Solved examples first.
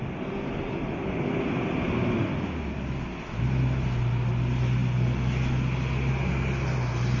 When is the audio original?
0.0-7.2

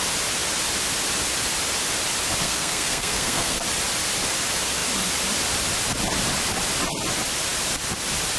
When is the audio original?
0.0-2.4; 3.6-8.4

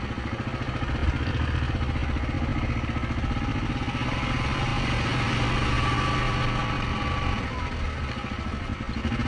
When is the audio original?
0.0-9.3

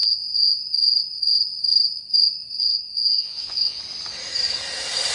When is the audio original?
0.6-2.6; 3.8-5.1

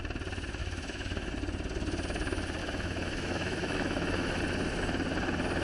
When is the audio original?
0.0-0.6; 1.3-2.6; 4.4-5.6

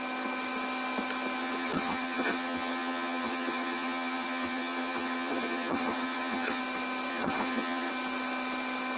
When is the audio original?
0.0-1.4; 6.6-7.1; 7.9-9.0

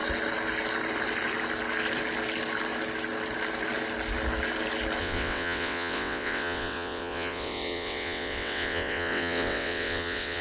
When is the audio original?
0.0-5.0